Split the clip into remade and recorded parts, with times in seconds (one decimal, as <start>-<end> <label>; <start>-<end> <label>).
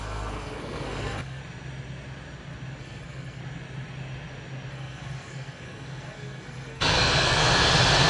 0.0-1.4 remade; 1.4-2.8 recorded; 2.8-3.4 remade; 3.4-4.7 recorded; 4.7-7.4 remade; 7.4-8.1 recorded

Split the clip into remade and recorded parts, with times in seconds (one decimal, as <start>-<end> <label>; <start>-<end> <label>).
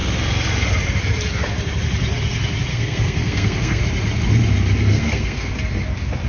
0.0-2.7 recorded; 2.7-3.8 remade; 3.8-4.9 recorded; 4.9-5.5 remade; 5.5-6.3 recorded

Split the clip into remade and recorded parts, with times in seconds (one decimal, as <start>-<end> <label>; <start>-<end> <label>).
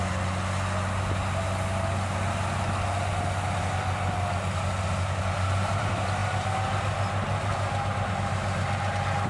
0.0-9.3 recorded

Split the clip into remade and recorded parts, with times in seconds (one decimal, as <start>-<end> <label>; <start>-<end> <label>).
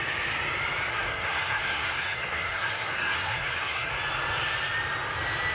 0.0-0.9 recorded; 0.9-3.9 remade; 3.9-5.5 recorded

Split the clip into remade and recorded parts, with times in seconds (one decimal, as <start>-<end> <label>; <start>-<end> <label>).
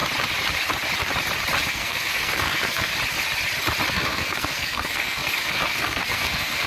0.0-1.7 recorded; 1.7-2.9 remade; 2.9-3.9 recorded; 3.9-6.7 remade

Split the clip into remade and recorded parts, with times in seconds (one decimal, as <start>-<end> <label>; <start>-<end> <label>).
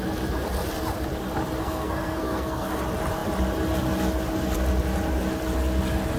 0.0-1.6 recorded; 1.6-2.8 remade; 2.8-6.2 recorded